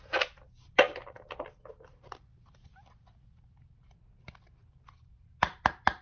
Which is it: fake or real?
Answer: real